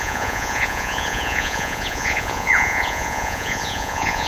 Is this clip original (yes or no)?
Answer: no